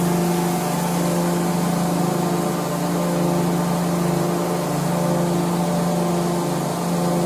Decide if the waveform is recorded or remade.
recorded